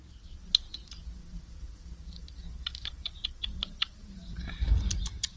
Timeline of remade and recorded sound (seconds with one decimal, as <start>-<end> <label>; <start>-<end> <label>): 0.0-1.2 recorded; 1.2-4.4 remade; 4.4-5.4 recorded